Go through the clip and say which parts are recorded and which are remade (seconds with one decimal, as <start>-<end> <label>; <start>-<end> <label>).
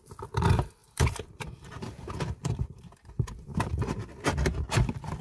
0.0-0.8 recorded; 0.8-1.8 remade; 1.8-2.4 recorded; 2.4-3.7 remade; 3.7-5.2 recorded